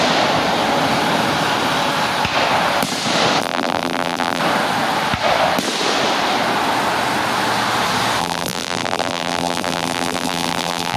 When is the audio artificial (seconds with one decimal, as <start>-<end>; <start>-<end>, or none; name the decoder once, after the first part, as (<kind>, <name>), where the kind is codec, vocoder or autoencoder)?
3.4-4.4 (vocoder, BigVGAN v2); 8.2-11.0